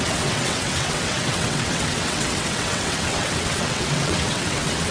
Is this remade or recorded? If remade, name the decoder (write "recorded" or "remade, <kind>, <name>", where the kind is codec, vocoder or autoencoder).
remade, vocoder, WaveNeXt